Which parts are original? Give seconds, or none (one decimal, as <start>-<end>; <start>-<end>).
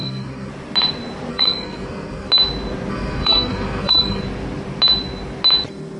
0.5-1.3; 2.3-2.9; 4.2-6.0